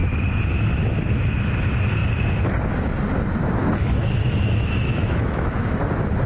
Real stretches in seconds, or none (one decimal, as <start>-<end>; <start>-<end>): 0.0-3.8; 5.8-6.3